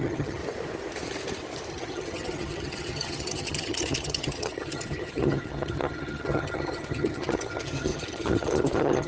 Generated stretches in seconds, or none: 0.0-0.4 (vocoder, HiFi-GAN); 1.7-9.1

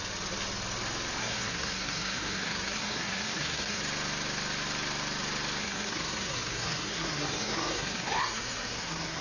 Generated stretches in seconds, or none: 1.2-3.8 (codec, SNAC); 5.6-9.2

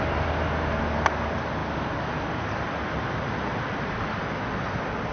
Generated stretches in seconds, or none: none

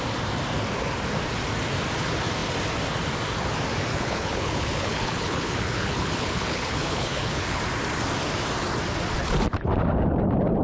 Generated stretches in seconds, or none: 3.9-7.6 (codec, HILCodec)

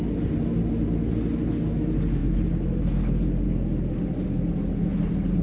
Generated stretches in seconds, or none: none

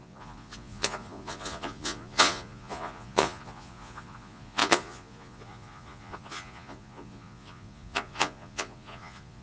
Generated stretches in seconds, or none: 0.0-9.4 (vocoder, Vocos)